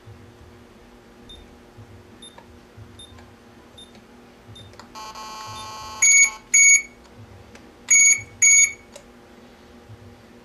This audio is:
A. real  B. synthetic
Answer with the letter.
A